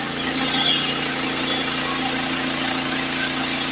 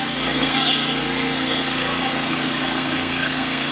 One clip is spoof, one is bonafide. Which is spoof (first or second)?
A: second